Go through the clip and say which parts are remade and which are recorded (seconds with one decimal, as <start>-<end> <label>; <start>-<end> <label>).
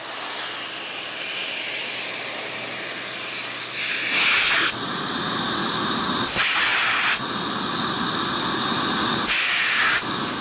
0.0-10.4 recorded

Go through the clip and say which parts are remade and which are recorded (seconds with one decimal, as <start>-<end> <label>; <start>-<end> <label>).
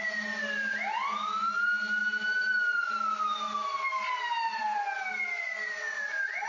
0.0-6.5 recorded